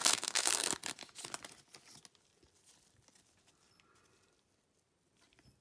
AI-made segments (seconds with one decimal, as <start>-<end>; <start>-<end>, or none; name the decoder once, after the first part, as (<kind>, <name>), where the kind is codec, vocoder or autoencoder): 0.0-0.7 (codec, SNAC)